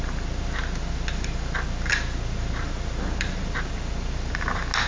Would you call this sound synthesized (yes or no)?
no